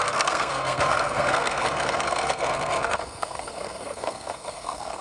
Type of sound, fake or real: fake